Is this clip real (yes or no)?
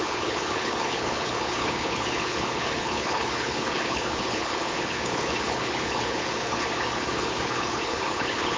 no